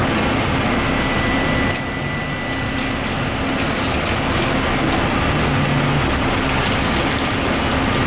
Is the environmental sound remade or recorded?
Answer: recorded